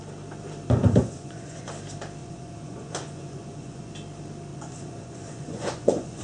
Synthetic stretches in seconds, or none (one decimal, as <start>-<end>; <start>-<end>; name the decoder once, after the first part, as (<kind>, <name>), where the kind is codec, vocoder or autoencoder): 1.0-1.7 (vocoder, Vocos); 2.2-3.9; 4.5-6.2